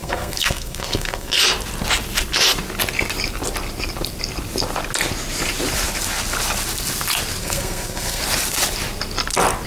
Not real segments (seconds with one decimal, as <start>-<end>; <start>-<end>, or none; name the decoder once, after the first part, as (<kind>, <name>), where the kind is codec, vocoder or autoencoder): 0.0-1.4 (codec, SNAC); 7.4-8.2